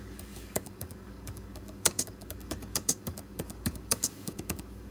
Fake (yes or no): yes